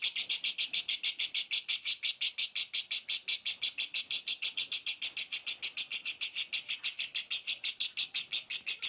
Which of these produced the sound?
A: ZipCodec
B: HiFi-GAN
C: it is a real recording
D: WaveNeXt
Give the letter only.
C